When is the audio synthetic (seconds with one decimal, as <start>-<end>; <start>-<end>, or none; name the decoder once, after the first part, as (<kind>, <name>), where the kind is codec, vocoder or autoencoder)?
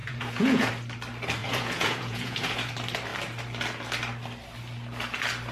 0.0-0.7 (vocoder, Vocos); 1.4-2.7